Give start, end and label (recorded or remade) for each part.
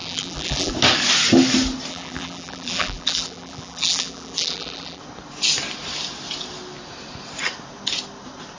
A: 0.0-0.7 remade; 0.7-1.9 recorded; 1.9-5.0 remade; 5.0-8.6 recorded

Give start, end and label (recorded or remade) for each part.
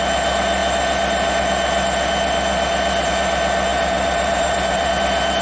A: 0.0-3.7 recorded; 3.7-4.9 remade; 4.9-5.4 recorded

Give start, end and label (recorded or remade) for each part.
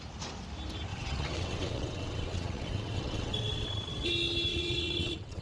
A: 0.0-0.9 recorded; 0.9-4.1 remade; 4.1-4.5 recorded; 4.5-5.4 remade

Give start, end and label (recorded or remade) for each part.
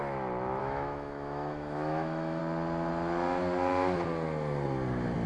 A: 0.0-0.6 recorded; 0.6-2.4 remade; 2.4-5.3 recorded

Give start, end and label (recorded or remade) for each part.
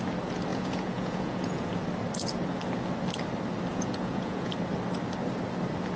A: 0.0-0.5 recorded; 0.5-1.7 remade; 1.7-3.7 recorded; 3.7-4.5 remade; 4.5-6.0 recorded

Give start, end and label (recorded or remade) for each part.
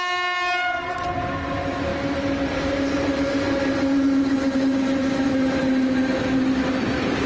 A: 0.0-7.3 recorded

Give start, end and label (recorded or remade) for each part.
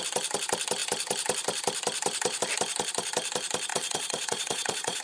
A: 0.0-3.7 recorded; 3.7-5.0 remade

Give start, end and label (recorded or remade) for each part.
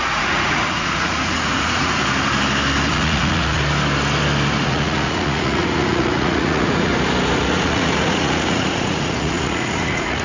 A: 0.0-2.0 remade; 2.0-2.9 recorded; 2.9-3.6 remade; 3.6-4.6 recorded; 4.6-6.9 remade; 6.9-7.5 recorded; 7.5-10.2 remade